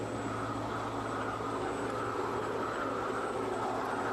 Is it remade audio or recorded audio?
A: recorded